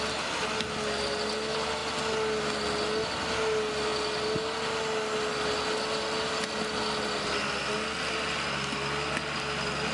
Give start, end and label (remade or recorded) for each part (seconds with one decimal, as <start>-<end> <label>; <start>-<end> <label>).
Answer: 0.0-9.9 recorded

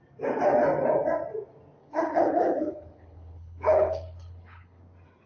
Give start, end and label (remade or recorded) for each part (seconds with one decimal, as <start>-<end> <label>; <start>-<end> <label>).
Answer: 0.0-1.8 recorded; 1.8-4.8 remade; 4.8-5.3 recorded

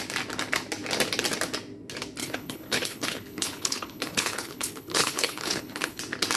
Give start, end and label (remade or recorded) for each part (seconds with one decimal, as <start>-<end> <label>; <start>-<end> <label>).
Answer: 0.0-2.2 recorded; 2.2-6.0 remade; 6.0-6.4 recorded